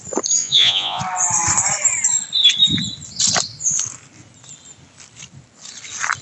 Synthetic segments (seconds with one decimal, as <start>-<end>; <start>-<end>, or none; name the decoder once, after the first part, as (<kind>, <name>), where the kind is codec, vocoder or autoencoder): 0.4-1.0 (vocoder, Vocos)